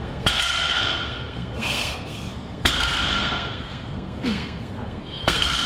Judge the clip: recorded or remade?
remade